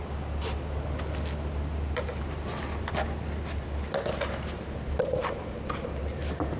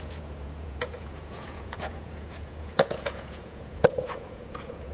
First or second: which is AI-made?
second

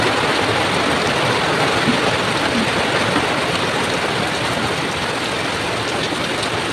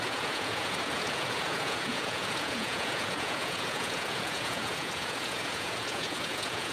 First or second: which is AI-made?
second